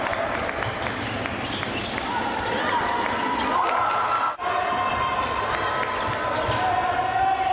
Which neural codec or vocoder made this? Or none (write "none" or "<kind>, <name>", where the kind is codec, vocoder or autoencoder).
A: none